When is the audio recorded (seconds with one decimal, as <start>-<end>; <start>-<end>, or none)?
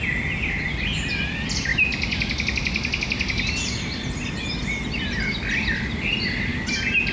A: 0.0-7.1